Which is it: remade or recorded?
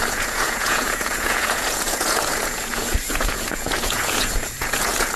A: remade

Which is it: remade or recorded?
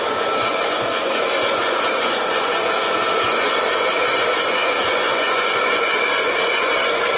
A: remade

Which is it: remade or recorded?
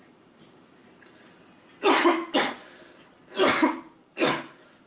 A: recorded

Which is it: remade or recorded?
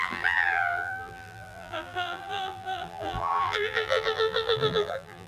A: remade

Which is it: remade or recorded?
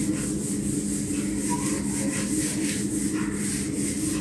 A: recorded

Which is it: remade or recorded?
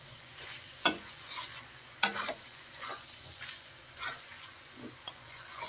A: remade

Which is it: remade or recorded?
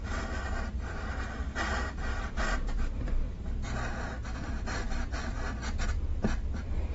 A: remade